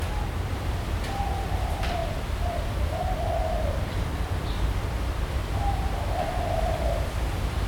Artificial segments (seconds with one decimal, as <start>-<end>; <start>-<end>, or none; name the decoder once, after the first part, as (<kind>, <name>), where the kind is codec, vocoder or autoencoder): 0.5-1.2 (vocoder, BigVGAN v2); 2.0-6.6